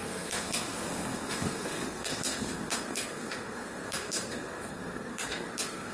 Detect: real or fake fake